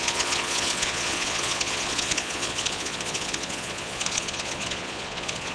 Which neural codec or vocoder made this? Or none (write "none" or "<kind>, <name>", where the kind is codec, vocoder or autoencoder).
vocoder, Vocos